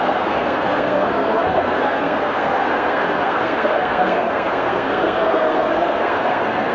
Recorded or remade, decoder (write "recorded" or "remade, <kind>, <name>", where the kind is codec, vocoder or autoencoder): remade, codec, SNAC